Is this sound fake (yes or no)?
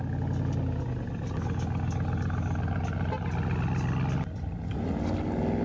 no